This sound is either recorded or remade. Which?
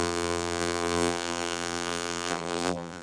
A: remade